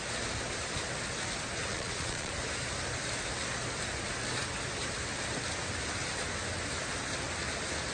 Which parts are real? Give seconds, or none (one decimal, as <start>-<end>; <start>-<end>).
0.0-1.7; 2.3-7.9

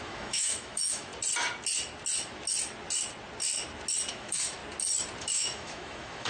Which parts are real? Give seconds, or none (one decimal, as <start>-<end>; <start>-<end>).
1.1-4.1; 4.6-5.2

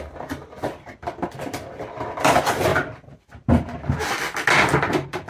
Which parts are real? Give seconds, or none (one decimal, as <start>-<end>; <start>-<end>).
0.0-5.3

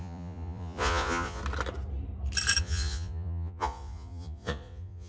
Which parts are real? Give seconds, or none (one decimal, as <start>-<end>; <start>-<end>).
1.4-2.6